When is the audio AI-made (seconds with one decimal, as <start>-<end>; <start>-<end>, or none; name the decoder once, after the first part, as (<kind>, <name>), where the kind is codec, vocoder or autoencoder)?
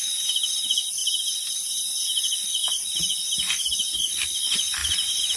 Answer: 1.0-1.7 (vocoder, BigVGAN v2); 2.6-4.0; 4.8-5.4